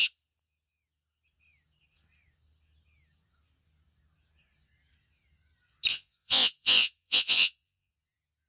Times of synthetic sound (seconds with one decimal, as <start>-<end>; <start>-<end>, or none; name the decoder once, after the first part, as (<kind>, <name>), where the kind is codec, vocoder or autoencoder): 5.9-7.9 (vocoder, Vocos)